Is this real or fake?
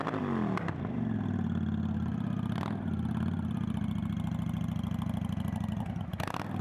real